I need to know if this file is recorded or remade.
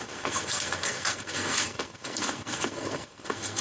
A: remade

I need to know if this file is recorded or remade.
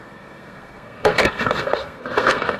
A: remade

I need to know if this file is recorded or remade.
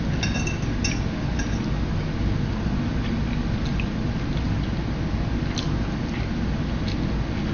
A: recorded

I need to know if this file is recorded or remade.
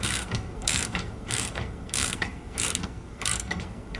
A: remade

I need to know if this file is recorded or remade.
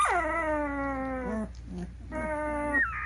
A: recorded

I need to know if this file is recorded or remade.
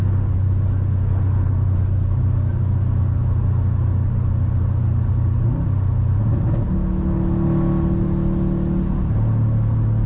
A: recorded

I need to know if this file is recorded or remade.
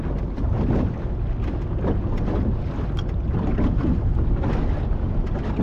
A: recorded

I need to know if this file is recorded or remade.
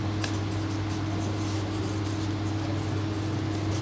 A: recorded